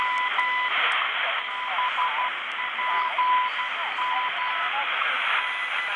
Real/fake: real